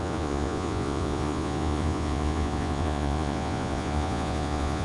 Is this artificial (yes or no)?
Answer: yes